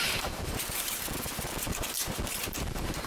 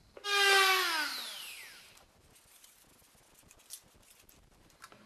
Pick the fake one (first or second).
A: first